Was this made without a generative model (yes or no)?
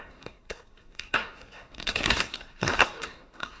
no